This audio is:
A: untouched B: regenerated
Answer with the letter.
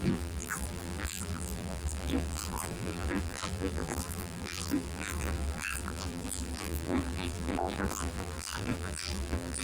B